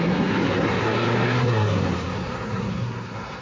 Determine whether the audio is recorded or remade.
remade